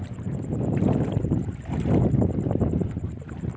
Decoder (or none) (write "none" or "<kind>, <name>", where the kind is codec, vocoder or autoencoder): vocoder, BigVGAN v2